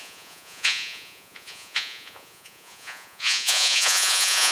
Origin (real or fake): fake